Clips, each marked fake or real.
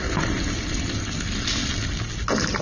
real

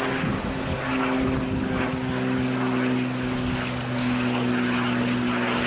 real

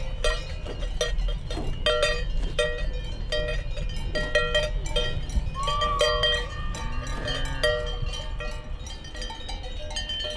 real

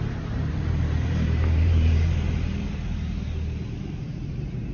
fake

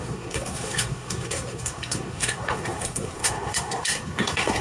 fake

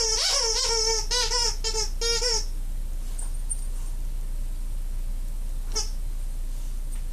real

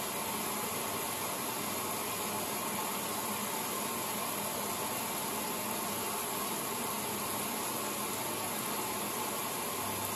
real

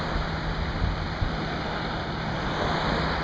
real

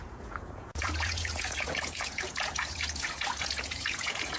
fake